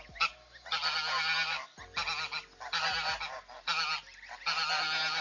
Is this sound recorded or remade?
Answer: recorded